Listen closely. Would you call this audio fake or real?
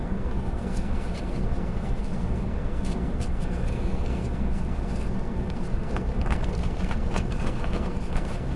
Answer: fake